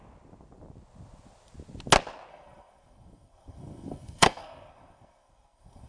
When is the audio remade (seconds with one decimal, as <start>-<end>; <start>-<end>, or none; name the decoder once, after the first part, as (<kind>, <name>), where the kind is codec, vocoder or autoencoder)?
2.3-5.9 (codec, SNAC)

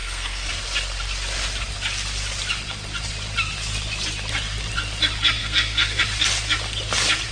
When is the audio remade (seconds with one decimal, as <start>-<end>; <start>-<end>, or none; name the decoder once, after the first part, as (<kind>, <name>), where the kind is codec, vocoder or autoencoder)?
0.0-0.5 (codec, SNAC); 5.4-6.0

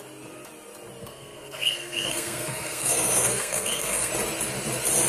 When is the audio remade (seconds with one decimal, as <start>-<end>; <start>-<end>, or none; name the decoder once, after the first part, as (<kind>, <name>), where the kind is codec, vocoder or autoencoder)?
1.0-4.1 (codec, SNAC)

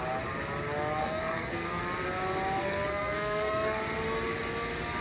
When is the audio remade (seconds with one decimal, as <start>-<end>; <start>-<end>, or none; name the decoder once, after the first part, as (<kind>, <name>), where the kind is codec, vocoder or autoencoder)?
1.0-1.8 (codec, SNAC); 2.6-3.8

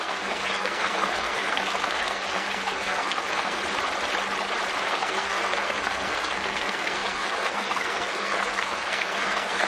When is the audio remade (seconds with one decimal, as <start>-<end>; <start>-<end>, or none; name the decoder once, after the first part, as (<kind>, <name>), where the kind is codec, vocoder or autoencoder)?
0.0-3.6 (codec, SNAC); 4.8-9.7

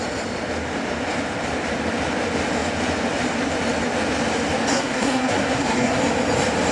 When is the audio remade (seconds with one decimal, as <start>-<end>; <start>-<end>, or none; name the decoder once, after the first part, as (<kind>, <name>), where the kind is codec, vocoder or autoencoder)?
4.7-6.0 (codec, SNAC)

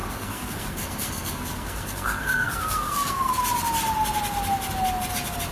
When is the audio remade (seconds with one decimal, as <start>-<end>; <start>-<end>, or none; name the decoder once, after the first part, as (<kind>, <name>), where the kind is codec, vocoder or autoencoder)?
0.0-3.3 (codec, SNAC)